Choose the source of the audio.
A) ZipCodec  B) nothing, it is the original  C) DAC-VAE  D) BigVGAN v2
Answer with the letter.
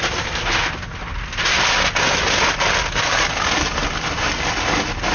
B